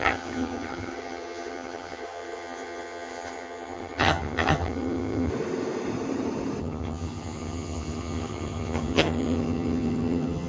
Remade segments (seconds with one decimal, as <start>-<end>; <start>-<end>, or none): 0.0-5.3; 6.6-10.5

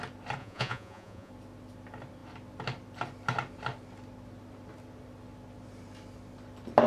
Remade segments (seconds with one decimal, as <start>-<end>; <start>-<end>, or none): 0.4-1.3

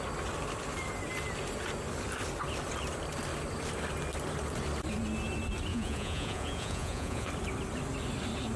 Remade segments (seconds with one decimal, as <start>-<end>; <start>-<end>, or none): 5.7-7.3

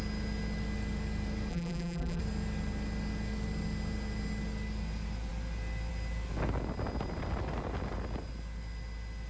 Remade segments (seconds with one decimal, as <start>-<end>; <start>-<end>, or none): 1.5-2.2